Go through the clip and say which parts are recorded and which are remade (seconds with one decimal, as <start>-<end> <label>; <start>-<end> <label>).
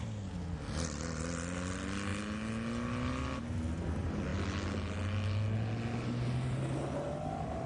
0.0-7.7 recorded